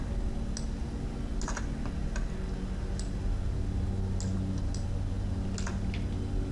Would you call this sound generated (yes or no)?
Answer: no